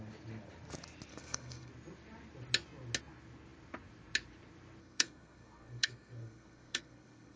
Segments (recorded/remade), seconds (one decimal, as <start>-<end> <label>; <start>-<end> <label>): 0.0-1.1 recorded; 1.1-1.7 remade; 1.7-4.8 recorded; 4.8-7.4 remade